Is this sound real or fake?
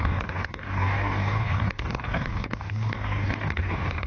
fake